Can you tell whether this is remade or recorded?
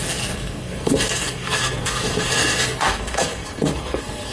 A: remade